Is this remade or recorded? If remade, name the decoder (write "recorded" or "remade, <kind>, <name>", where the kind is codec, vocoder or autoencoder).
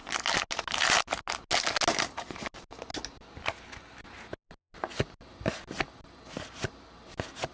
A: recorded